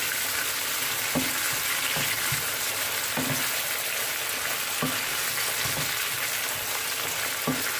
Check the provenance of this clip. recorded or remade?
recorded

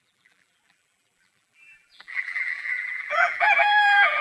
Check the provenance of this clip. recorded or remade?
remade